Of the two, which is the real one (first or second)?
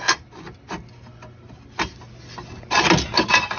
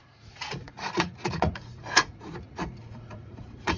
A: first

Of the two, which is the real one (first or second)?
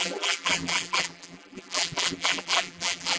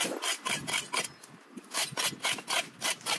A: second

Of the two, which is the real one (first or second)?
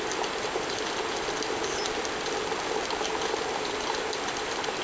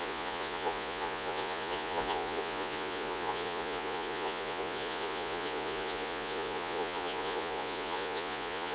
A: first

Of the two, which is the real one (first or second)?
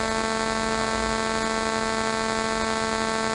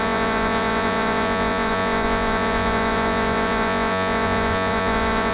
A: first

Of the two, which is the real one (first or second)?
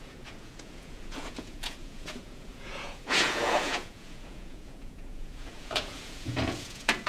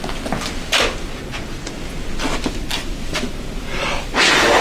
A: second